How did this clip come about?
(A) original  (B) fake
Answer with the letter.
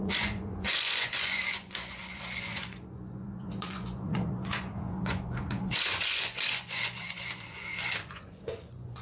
B